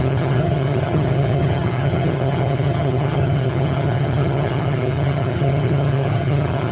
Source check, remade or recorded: remade